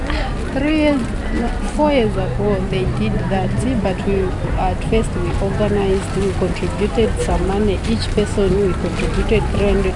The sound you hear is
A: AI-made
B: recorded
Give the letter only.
B